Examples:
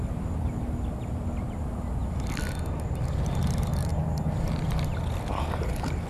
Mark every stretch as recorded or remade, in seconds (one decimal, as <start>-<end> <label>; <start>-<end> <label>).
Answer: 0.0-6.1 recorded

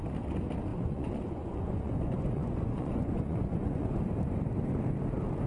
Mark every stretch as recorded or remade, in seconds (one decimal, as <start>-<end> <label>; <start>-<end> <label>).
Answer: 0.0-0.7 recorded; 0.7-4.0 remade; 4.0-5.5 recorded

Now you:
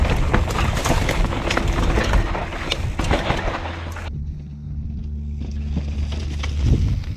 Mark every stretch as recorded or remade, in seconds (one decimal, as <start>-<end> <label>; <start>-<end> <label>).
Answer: 0.0-7.2 recorded